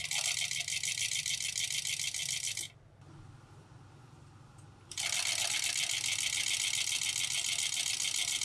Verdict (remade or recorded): recorded